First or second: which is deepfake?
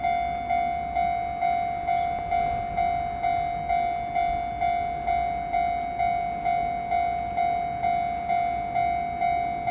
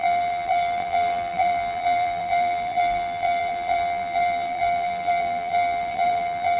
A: second